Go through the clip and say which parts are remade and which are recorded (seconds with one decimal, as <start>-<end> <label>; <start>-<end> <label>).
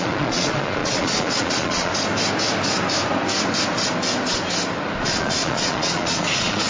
0.0-1.9 remade; 1.9-5.0 recorded; 5.0-6.7 remade